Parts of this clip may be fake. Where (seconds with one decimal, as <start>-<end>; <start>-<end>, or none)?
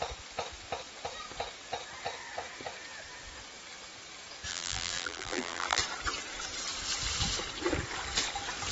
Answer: 4.5-5.8